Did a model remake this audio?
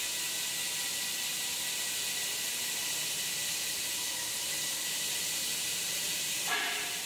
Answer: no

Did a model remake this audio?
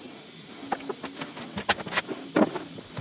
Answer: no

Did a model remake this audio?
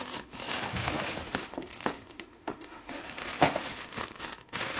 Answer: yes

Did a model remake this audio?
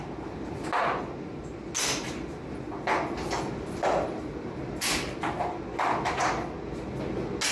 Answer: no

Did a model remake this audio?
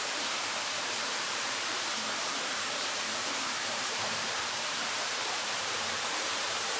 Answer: yes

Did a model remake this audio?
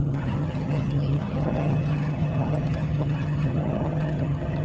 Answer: yes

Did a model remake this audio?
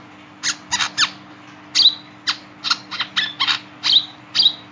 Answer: no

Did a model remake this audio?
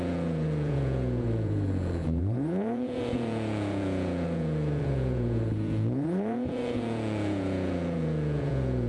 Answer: yes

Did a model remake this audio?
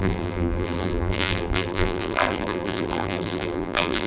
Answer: yes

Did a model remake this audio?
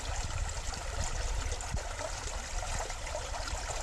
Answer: no